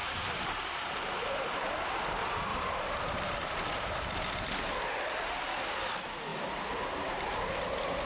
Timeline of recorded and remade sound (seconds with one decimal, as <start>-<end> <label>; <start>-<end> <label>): 0.0-1.6 remade; 1.6-2.5 recorded; 2.5-4.3 remade; 4.3-8.1 recorded